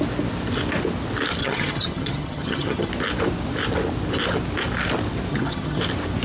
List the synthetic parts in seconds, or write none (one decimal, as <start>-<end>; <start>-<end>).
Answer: 1.4-2.9; 5.3-5.8